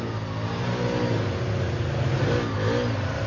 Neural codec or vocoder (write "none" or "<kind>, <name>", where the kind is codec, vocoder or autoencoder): none